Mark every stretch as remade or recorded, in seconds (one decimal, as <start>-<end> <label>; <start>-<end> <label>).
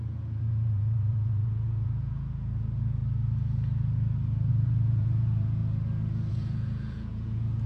0.0-3.0 remade; 3.0-4.5 recorded; 4.5-5.6 remade; 5.6-6.3 recorded; 6.3-7.7 remade